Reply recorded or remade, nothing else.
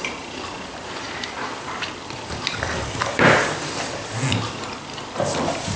remade